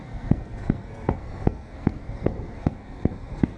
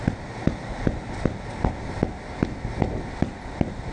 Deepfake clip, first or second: first